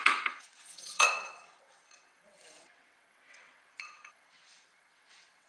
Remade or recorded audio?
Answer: remade